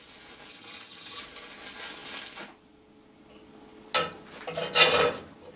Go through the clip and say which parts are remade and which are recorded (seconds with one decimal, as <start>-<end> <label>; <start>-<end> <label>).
0.0-0.5 recorded; 0.5-1.2 remade; 1.2-5.6 recorded